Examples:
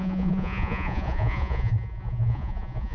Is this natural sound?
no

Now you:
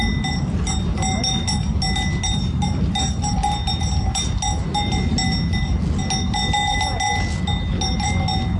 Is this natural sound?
yes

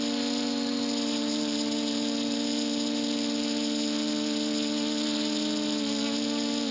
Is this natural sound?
yes